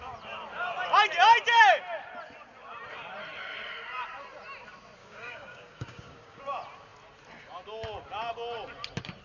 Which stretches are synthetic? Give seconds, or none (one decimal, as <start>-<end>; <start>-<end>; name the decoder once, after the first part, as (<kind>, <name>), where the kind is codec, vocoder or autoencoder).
5.0-6.4 (codec, DAC)